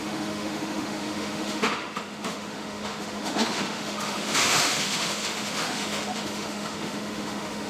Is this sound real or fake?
fake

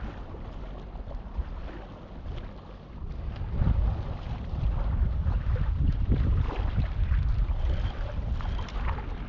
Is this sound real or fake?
real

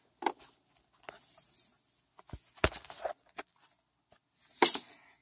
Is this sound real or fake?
real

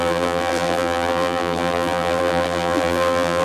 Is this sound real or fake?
fake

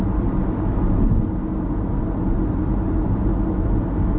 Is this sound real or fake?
real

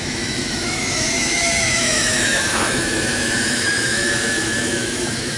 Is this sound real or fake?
fake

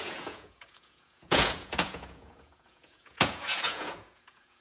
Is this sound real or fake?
fake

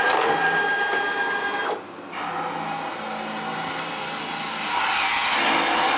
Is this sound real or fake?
real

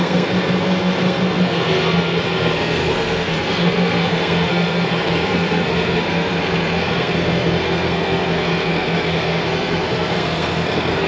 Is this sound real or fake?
fake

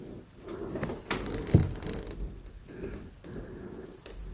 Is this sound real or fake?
real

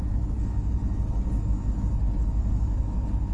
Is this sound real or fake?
real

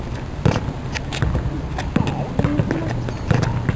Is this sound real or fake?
real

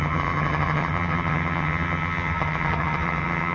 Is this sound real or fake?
fake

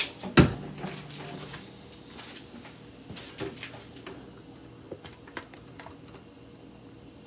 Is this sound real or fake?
real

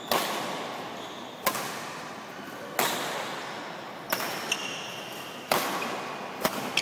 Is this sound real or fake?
real